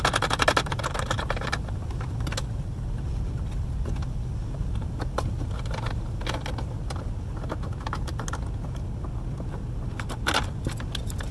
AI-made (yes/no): no